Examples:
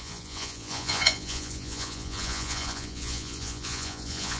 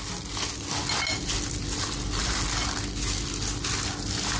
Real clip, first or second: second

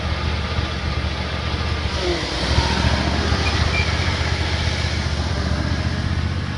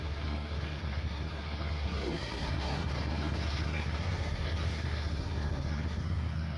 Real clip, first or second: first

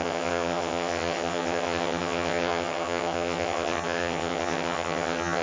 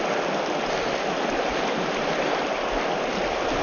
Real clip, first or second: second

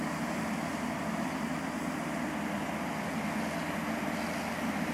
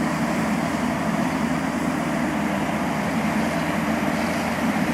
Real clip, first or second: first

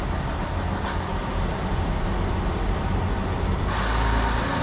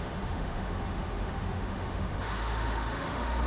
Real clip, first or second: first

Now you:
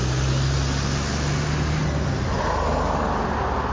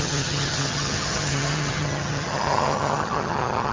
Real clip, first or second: first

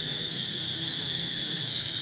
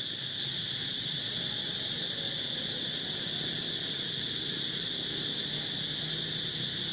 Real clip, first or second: second